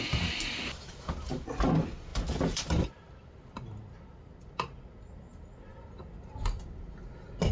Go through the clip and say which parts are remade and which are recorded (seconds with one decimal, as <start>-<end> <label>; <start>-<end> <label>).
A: 0.0-7.5 recorded

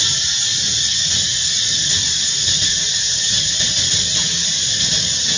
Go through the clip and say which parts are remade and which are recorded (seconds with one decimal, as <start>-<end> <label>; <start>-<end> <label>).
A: 0.0-3.0 recorded; 3.0-3.5 remade; 3.5-5.4 recorded

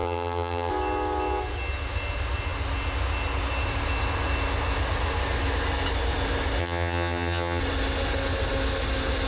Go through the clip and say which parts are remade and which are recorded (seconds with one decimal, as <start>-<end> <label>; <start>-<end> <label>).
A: 0.0-0.7 remade; 0.7-6.6 recorded; 6.6-7.6 remade; 7.6-9.3 recorded

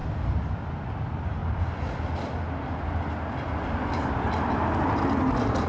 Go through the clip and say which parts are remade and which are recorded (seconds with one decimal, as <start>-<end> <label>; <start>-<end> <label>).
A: 0.0-5.7 recorded

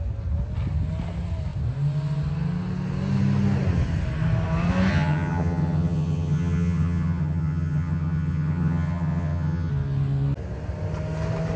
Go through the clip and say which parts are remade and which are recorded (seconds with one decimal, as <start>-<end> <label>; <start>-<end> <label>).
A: 0.0-4.9 recorded; 4.9-9.7 remade; 9.7-11.6 recorded

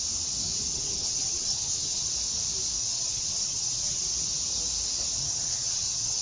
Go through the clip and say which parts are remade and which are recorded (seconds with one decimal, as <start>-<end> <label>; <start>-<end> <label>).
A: 0.0-0.7 recorded; 0.7-2.1 remade; 2.1-2.8 recorded; 2.8-4.0 remade; 4.0-5.2 recorded; 5.2-6.2 remade

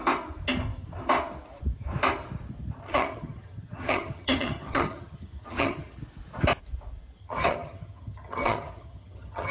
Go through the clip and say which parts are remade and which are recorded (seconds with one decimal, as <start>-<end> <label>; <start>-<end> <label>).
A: 0.0-2.8 recorded; 2.8-6.0 remade; 6.0-7.2 recorded; 7.2-9.5 remade

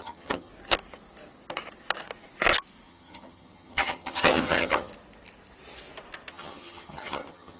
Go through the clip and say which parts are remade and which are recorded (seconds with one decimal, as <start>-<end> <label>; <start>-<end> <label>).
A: 0.0-0.5 remade; 0.5-2.9 recorded; 2.9-4.9 remade; 4.9-6.3 recorded; 6.3-7.6 remade